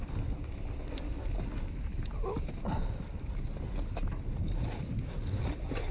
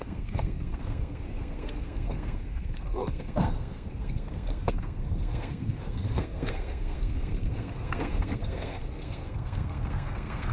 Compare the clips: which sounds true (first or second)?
first